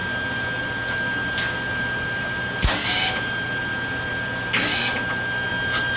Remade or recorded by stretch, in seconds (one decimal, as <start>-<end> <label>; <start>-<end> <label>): 0.0-6.0 recorded